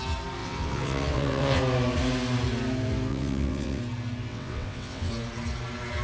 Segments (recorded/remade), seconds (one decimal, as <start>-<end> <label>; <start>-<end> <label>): 0.0-0.4 recorded; 0.4-1.6 remade; 1.6-3.1 recorded; 3.1-3.8 remade; 3.8-4.3 recorded; 4.3-5.1 remade; 5.1-6.0 recorded